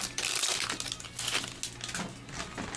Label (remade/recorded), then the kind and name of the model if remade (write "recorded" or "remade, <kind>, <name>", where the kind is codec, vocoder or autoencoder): recorded